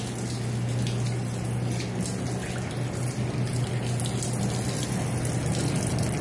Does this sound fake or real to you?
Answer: real